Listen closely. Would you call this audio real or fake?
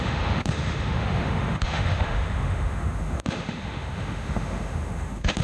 fake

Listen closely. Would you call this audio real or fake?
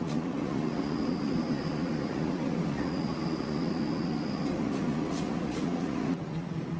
fake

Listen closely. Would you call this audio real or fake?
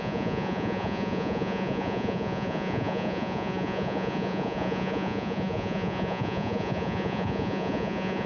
fake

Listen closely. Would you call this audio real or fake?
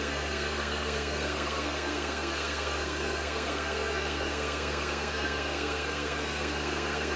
fake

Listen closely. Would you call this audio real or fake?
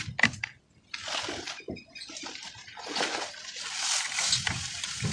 real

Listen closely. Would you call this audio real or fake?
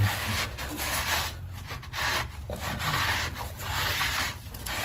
real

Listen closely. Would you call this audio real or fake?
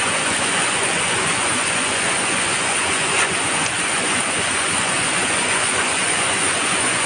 fake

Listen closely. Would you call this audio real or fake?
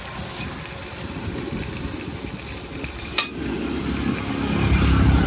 real